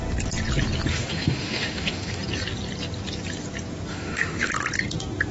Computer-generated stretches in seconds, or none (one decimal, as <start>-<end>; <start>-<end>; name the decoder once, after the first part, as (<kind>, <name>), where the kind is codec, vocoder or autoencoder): 0.9-2.2 (autoencoder, DAC-VAE); 3.9-4.5

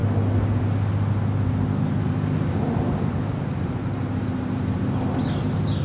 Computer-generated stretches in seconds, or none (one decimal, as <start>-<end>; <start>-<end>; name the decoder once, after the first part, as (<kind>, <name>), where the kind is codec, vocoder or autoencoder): none

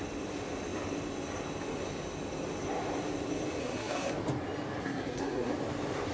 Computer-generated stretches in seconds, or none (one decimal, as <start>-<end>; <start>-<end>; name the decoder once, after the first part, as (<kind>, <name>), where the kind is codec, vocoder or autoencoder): 3.6-4.1 (codec, SNAC); 4.8-5.5

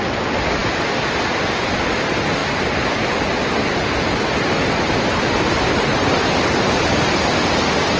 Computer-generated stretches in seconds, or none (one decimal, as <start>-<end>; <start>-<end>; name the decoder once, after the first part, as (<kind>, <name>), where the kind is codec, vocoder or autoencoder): none

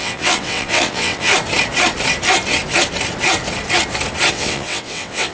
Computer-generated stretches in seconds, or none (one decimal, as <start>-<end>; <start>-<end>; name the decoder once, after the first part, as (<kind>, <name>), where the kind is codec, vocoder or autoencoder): 0.0-1.3 (vocoder, WaveNeXt); 4.3-5.3

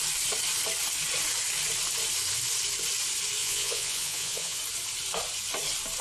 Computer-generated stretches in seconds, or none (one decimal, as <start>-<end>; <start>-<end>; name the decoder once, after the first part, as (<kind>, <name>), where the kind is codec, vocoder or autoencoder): 3.4-4.6 (vocoder, Vocos)

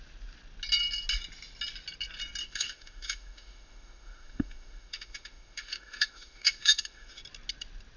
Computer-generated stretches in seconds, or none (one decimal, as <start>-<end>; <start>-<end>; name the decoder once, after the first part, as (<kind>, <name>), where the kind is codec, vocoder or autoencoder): 2.4-7.2 (autoencoder, DAC-VAE)